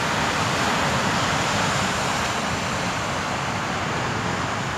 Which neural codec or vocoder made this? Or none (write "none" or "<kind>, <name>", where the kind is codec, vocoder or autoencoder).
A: none